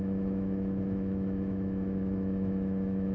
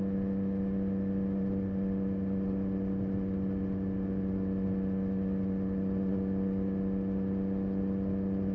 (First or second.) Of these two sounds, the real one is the second